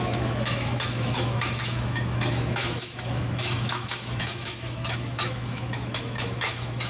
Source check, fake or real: fake